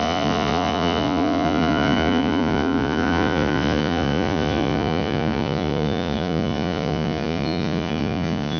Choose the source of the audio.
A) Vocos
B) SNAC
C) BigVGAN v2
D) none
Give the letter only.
A